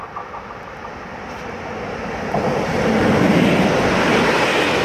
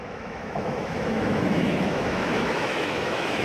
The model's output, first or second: second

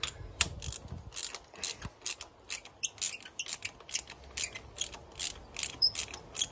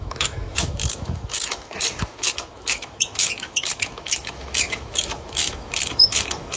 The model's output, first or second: second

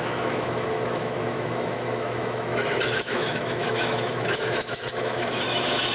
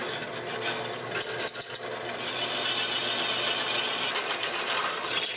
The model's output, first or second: first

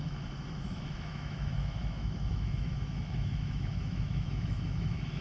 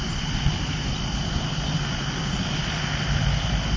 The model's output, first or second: first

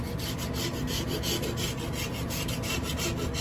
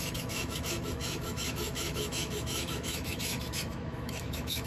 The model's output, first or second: second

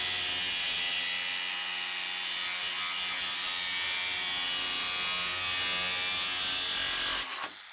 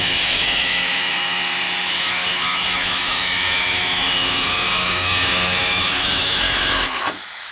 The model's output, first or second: second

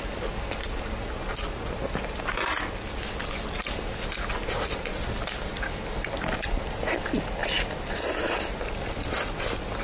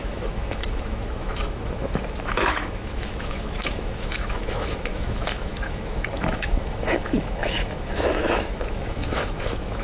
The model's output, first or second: second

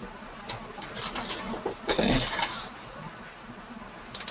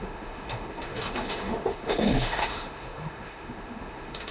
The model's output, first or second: second